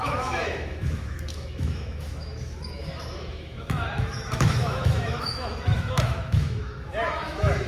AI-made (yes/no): yes